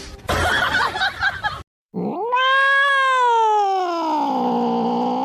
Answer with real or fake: real